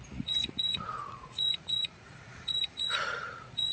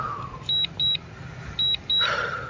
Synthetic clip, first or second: first